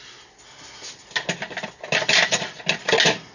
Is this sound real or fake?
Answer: real